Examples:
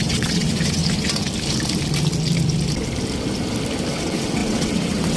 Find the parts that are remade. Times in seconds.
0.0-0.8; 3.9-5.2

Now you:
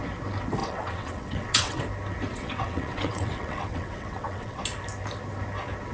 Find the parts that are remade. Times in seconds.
0.6-1.8; 2.3-4.6

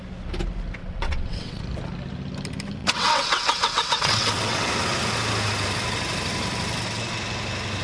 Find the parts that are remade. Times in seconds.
0.8-1.6; 2.8-4.7

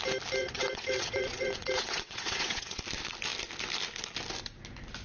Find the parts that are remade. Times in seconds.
0.4-2.8

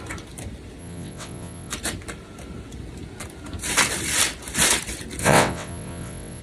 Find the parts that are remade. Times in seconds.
0.8-1.7; 5.2-6.4